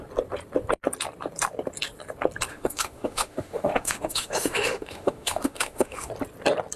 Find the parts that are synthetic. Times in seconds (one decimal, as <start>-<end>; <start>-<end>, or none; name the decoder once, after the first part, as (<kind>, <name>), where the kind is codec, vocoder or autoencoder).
2.5-6.1 (autoencoder, DAC-VAE)